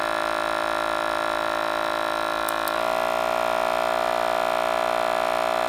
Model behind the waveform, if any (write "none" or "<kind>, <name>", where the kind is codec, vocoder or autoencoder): none